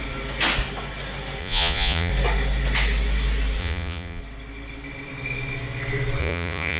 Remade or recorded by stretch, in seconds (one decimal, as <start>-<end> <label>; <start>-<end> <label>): 0.0-1.4 recorded; 1.4-2.1 remade; 2.1-3.6 recorded; 3.6-4.2 remade; 4.2-6.2 recorded; 6.2-6.8 remade